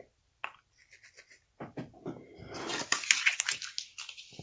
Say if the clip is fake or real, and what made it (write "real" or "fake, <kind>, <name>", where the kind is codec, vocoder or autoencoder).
real